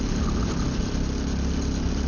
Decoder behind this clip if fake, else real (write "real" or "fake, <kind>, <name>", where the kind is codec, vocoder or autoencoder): real